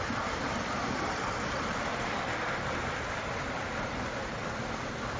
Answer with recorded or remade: remade